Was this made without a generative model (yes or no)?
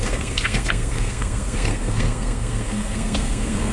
no